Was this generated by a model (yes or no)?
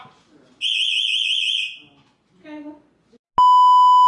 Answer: no